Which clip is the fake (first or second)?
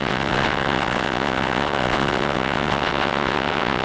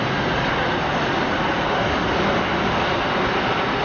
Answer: first